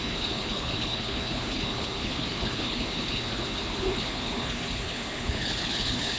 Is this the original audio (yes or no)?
no